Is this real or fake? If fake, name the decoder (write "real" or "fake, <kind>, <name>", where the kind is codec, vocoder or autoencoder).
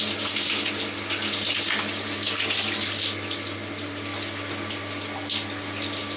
real